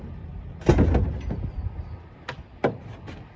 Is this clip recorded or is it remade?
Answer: recorded